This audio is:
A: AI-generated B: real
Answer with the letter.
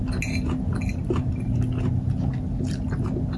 B